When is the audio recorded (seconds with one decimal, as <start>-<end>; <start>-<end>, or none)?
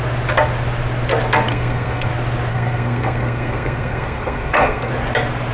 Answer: 0.0-1.5; 2.1-2.5; 4.9-5.5